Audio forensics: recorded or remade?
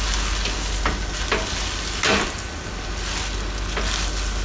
recorded